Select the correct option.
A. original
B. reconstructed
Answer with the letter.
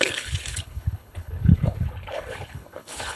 B